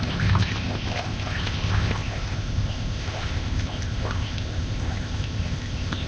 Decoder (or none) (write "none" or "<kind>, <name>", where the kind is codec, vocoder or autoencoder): codec, ZipCodec